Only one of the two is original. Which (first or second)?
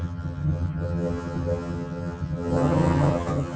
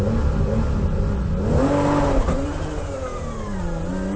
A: second